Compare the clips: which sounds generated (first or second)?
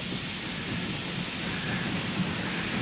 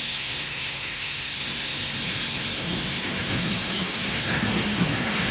second